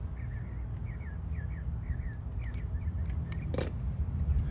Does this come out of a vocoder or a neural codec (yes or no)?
no